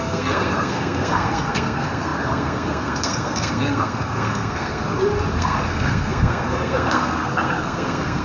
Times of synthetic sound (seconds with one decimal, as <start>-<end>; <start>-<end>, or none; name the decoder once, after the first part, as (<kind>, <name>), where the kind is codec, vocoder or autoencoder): 0.0-4.8 (codec, SNAC); 5.3-8.2